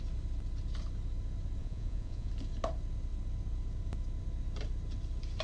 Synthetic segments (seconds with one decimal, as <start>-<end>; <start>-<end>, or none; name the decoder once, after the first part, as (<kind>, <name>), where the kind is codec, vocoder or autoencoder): 1.6-2.3 (vocoder, Vocos)